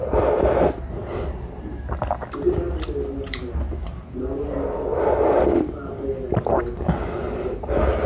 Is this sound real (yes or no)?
yes